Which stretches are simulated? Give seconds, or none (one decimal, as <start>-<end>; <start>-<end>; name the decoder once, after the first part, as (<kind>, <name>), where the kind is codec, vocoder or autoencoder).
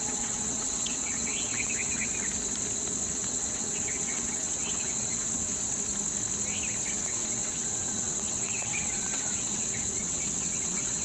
0.0-2.1 (vocoder, WaveNeXt); 3.1-5.5; 6.9-11.0